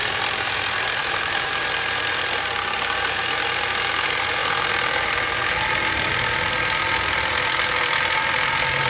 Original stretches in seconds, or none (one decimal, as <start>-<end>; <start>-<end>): 0.0-1.0; 1.5-8.9